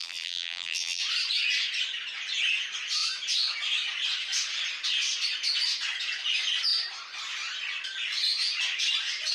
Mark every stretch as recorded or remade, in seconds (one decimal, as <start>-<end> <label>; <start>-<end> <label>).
0.0-1.0 remade; 1.0-9.3 recorded